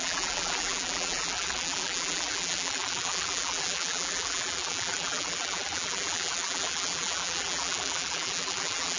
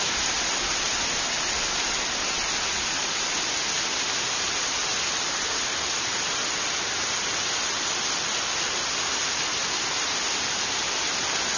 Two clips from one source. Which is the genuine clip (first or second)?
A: second